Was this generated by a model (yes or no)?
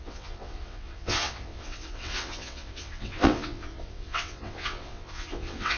yes